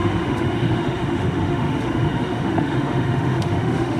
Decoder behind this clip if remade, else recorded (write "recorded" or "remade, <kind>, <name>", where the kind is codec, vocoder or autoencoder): remade, autoencoder, DAC-VAE